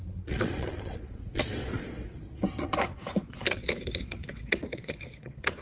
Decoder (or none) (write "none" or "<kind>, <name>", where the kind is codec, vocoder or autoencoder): vocoder, Vocos